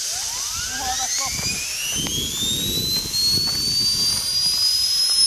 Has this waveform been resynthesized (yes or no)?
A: no